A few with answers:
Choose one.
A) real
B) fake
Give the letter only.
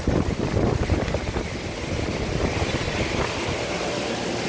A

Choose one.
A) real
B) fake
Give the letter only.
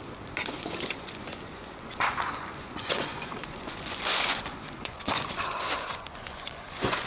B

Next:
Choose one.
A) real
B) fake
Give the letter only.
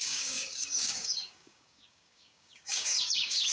B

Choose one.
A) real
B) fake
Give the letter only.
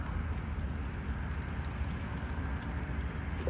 A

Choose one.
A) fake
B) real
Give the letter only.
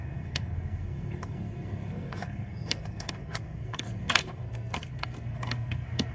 A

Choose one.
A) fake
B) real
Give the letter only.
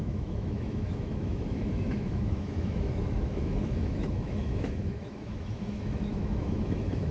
A